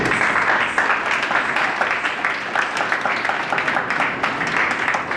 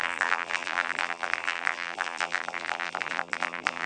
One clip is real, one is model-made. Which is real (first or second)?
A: first